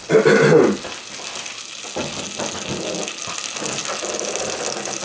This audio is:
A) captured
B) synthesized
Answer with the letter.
A